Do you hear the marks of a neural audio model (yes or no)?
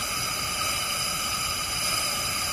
yes